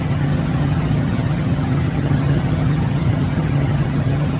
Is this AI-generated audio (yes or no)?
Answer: yes